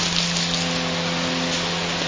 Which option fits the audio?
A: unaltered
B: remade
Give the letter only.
A